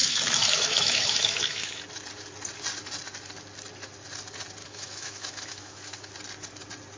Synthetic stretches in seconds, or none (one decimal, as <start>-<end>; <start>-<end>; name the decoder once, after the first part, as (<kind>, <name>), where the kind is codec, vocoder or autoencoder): 0.0-1.8 (autoencoder, DAC-VAE); 4.6-6.1